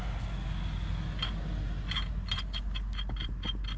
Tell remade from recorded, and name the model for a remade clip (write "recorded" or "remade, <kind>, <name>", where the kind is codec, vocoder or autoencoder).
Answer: recorded